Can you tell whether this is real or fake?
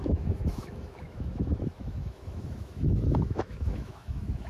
fake